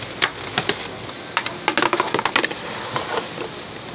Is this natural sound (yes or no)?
yes